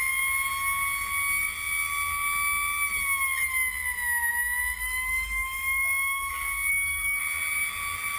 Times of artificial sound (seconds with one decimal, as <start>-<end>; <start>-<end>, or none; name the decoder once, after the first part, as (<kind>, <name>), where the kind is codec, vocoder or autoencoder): 4.8-6.3 (autoencoder, DAC-VAE); 6.7-7.2